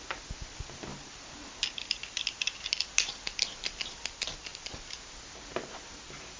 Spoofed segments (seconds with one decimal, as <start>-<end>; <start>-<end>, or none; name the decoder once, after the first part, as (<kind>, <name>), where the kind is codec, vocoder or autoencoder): none